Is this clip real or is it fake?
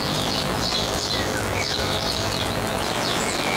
fake